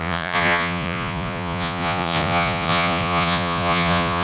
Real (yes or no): no